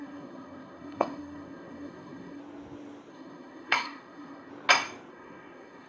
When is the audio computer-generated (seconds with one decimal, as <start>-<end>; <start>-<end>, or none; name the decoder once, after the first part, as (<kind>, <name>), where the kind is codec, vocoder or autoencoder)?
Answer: 0.0-2.4 (codec, SNAC); 3.1-4.5; 5.1-5.9